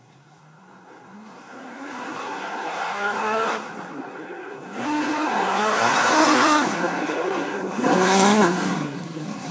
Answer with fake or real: fake